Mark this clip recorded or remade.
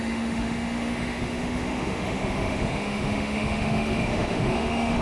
remade